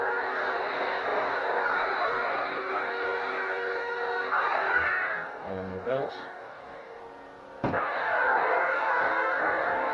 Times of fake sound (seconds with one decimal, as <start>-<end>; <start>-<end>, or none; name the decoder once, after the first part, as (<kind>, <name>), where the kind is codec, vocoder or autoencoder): 0.0-7.0 (codec, DAC); 7.8-9.9